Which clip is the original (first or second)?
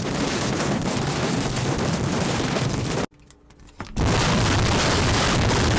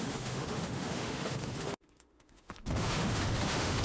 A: first